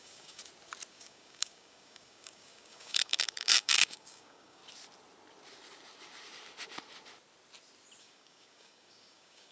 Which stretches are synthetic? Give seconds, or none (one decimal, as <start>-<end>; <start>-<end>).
0.0-0.4; 0.9-4.6; 8.0-9.5